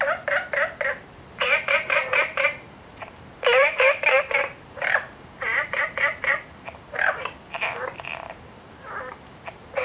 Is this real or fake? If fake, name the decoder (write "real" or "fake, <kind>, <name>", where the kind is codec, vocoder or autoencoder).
fake, vocoder, BigVGAN v2